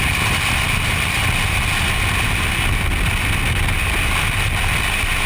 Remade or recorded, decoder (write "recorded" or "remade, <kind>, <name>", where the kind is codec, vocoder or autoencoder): recorded